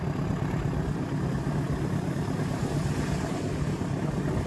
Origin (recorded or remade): recorded